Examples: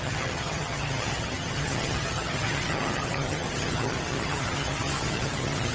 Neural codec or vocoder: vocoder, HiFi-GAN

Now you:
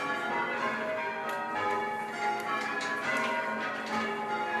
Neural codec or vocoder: none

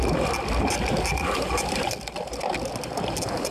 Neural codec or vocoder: none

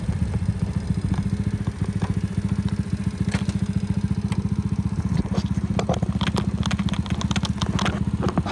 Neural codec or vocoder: none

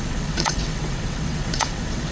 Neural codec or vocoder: vocoder, WaveNeXt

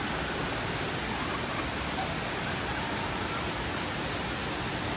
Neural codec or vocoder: none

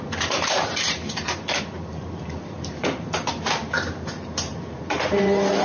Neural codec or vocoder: vocoder, BigVGAN v2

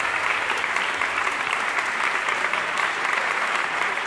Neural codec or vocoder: vocoder, BigVGAN v2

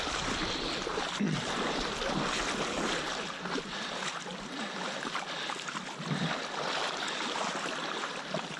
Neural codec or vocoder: none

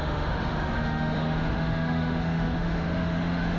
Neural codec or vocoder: autoencoder, DAC-VAE